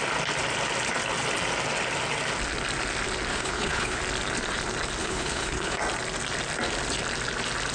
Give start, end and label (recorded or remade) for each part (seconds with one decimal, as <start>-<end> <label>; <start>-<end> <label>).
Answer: 0.0-3.3 recorded; 3.3-4.0 remade; 4.0-5.0 recorded; 5.0-5.8 remade; 5.8-7.7 recorded